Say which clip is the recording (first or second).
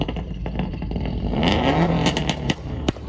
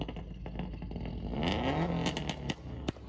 second